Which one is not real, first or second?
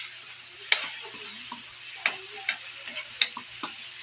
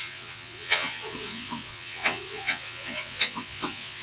second